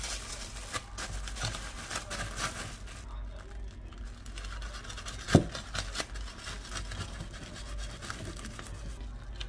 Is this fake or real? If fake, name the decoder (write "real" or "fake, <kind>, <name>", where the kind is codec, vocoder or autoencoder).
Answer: real